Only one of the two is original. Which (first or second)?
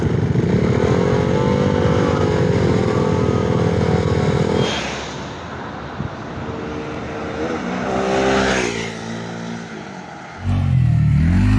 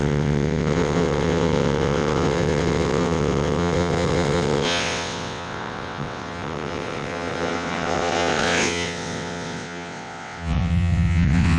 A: first